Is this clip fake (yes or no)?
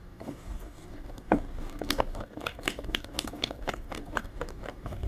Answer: yes